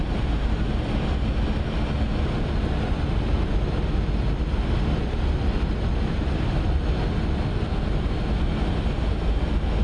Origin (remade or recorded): recorded